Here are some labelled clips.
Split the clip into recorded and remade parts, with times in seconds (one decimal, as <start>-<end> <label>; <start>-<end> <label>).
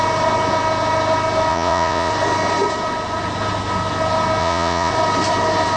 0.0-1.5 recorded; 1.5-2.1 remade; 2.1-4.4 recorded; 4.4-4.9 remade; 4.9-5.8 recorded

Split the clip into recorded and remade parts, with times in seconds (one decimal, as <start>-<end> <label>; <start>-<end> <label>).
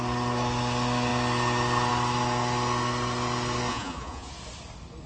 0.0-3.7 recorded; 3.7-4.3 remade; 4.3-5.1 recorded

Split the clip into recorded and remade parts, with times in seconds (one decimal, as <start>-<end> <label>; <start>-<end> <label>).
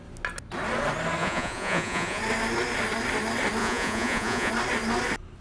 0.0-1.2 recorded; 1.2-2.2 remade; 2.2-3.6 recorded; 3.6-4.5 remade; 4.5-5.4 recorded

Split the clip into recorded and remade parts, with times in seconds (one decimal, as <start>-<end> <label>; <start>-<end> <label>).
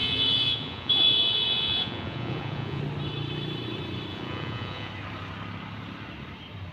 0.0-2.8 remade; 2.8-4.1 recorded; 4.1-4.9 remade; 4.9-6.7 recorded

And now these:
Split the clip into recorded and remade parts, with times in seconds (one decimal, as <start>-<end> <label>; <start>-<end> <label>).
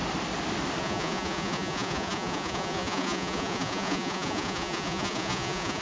0.0-0.8 recorded; 0.8-5.8 remade